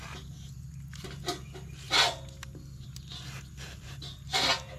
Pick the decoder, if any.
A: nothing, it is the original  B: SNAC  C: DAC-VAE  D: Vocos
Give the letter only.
A